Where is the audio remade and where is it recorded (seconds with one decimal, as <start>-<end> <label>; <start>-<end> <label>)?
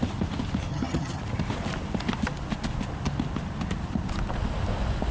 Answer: 0.0-0.7 recorded; 0.7-1.2 remade; 1.2-5.1 recorded